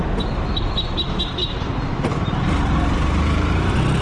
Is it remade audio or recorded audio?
recorded